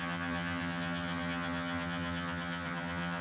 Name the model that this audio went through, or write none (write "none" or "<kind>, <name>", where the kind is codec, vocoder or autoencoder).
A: vocoder, HiFi-GAN